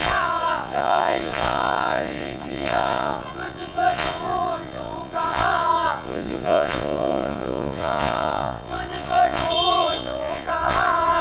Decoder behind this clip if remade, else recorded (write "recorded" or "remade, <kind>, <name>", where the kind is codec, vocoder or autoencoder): remade, vocoder, Vocos